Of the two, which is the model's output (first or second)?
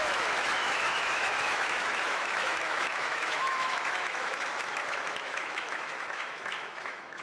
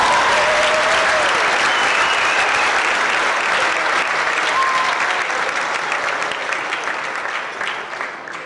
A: first